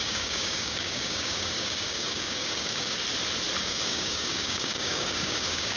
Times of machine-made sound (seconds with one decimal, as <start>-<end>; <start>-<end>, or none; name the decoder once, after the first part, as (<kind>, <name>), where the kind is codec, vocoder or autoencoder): 0.0-3.0 (codec, DAC); 3.6-5.8